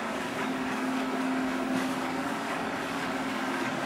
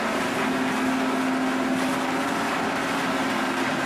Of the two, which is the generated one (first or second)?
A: first